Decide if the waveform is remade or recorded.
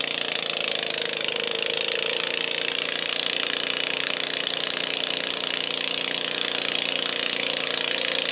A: recorded